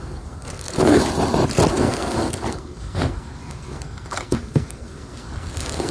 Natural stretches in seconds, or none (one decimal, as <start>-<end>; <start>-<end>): 1.0-1.7